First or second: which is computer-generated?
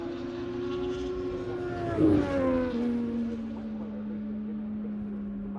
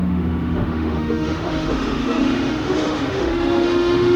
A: second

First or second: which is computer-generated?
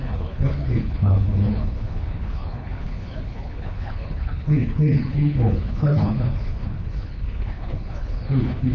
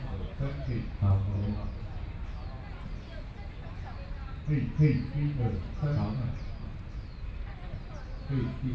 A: first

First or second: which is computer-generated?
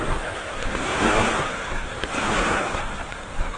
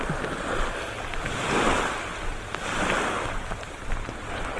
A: first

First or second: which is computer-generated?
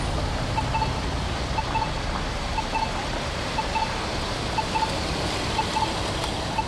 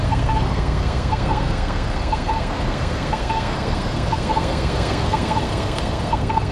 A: second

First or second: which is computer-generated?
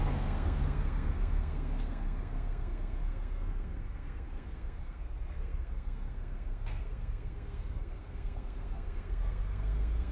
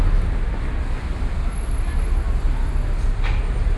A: first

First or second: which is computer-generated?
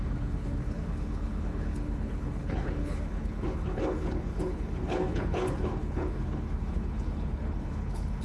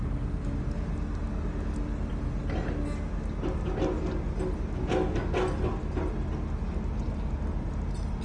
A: first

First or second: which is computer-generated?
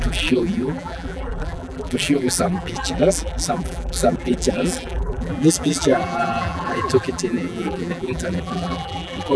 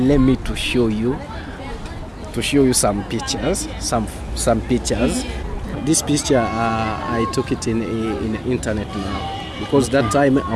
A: first